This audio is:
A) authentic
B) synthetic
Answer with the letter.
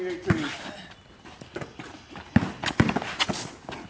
A